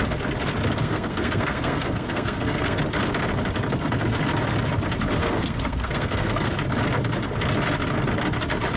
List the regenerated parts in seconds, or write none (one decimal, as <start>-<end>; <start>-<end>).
0.8-2.8; 5.2-6.5

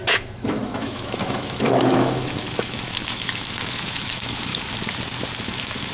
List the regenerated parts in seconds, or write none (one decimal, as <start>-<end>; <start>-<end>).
0.0-4.5; 5.4-5.9

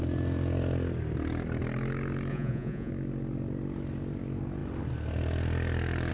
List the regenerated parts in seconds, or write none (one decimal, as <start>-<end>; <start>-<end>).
2.3-2.9

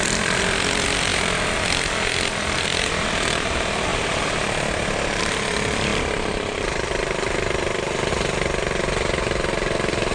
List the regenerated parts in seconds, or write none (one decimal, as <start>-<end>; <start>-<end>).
0.0-10.1

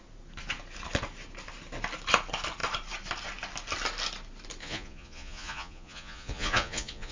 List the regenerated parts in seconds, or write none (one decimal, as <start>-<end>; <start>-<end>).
4.6-7.1

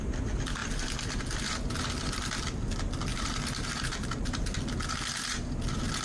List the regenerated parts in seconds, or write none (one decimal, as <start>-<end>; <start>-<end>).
3.1-4.6